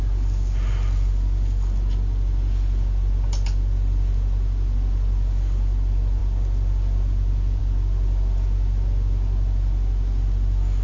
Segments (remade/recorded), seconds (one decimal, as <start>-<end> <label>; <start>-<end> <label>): 0.0-10.8 recorded